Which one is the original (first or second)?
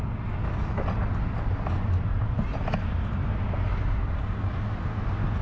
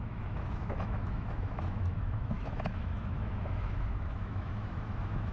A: first